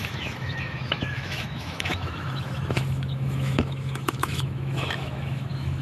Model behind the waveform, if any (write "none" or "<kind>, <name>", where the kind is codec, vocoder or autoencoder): autoencoder, DAC-VAE